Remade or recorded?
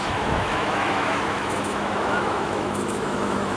remade